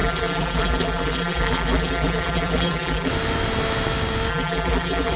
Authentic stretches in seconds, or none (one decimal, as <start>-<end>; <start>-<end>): 3.1-4.3